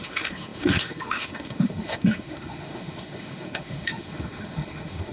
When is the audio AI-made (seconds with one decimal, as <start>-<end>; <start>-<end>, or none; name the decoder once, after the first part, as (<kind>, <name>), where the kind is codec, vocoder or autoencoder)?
0.0-5.1 (autoencoder, DAC-VAE)